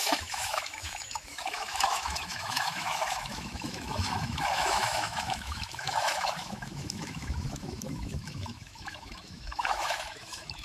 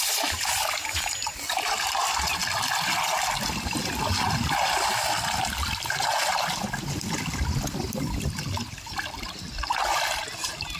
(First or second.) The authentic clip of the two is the second